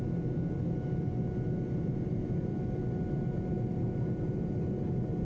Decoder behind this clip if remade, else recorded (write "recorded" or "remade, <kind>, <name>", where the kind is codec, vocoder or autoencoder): recorded